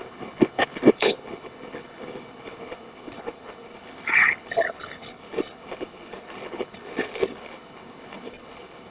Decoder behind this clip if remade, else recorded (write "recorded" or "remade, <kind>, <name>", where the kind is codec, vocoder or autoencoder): remade, codec, HILCodec